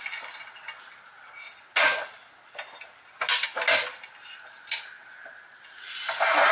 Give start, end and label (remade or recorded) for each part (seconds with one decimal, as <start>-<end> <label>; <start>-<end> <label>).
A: 0.0-6.5 recorded